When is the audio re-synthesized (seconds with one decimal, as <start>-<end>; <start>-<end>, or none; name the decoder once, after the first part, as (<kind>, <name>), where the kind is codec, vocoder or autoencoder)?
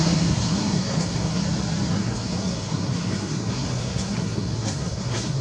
0.0-1.4 (codec, SNAC); 1.9-5.4